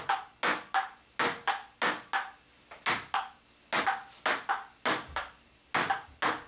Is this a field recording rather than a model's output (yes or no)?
yes